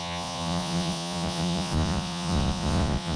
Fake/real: fake